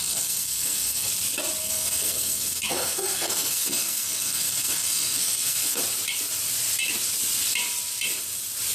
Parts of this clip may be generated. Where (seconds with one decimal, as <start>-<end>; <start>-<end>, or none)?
0.0-1.1; 1.6-5.8